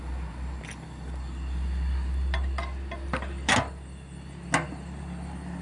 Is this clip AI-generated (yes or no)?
no